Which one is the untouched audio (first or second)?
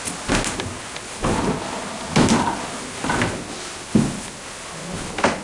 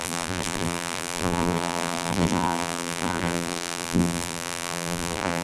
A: first